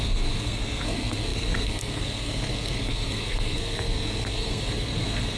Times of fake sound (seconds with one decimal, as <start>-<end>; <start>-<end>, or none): 0.0-5.4